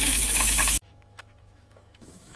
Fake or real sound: fake